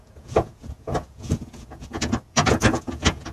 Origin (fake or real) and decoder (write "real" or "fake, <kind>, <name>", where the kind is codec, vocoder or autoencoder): fake, vocoder, Vocos